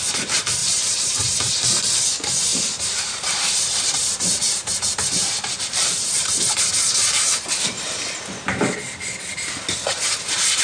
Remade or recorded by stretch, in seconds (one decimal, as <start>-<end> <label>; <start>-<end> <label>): 0.0-0.6 recorded; 0.6-1.5 remade; 1.5-2.5 recorded; 2.5-6.5 remade; 6.5-10.6 recorded